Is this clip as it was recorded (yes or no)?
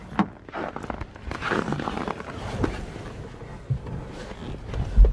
yes